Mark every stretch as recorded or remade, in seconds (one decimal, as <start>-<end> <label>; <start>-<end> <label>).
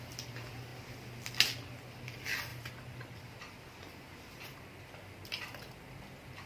0.0-6.5 recorded